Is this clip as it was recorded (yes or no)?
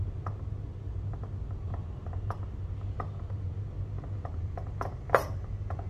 yes